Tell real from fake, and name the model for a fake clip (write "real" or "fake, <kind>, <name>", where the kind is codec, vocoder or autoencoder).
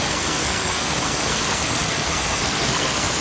fake, codec, SNAC